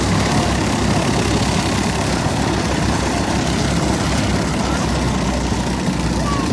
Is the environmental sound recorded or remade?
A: recorded